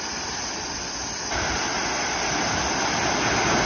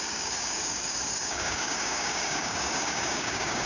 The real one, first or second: first